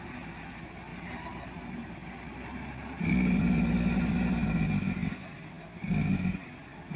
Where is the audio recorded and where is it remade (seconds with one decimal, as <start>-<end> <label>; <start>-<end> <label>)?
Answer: 0.0-0.9 recorded; 0.9-3.0 remade; 3.0-7.0 recorded